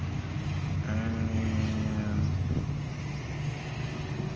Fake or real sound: real